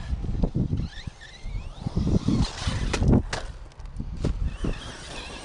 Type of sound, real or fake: real